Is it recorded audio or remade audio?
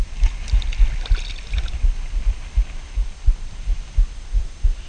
recorded